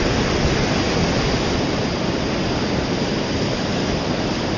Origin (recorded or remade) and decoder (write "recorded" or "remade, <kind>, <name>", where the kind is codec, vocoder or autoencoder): recorded